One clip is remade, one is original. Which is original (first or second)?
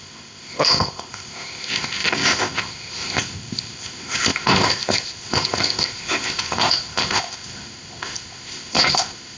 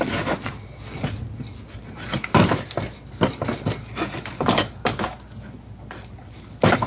second